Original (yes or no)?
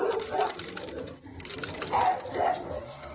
no